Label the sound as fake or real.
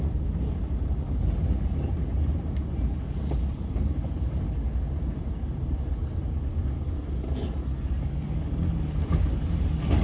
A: real